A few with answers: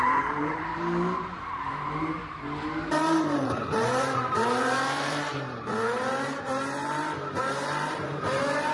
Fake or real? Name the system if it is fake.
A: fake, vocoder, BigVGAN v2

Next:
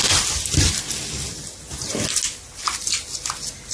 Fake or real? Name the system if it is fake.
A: real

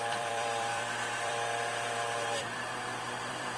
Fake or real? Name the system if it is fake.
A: fake, vocoder, BigVGAN v2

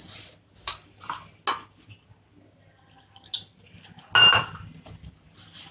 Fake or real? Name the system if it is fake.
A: real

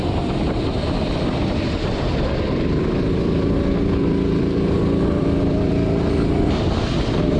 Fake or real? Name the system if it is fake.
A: fake, vocoder, BigVGAN v2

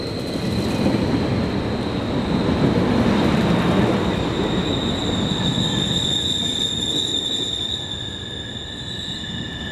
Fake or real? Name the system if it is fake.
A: real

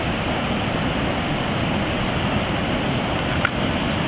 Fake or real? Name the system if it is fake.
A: real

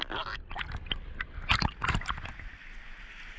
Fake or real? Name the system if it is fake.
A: real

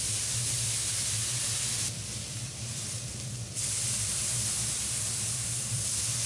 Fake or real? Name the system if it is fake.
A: fake, vocoder, BigVGAN v2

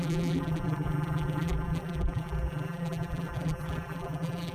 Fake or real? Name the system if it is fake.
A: fake, vocoder, BigVGAN v2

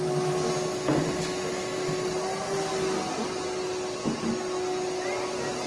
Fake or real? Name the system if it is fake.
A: real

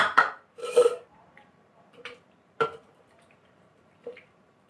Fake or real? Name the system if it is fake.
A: fake, vocoder, BigVGAN v2